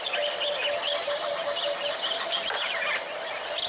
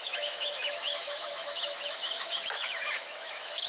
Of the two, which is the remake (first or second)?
second